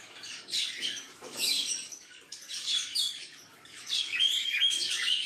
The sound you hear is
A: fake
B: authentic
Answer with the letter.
A